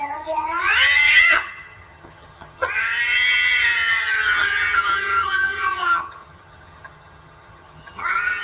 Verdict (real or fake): fake